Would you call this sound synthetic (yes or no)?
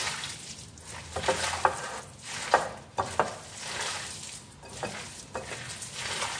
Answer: no